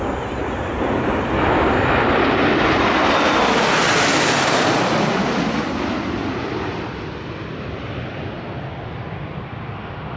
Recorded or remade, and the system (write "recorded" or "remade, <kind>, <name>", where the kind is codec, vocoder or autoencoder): recorded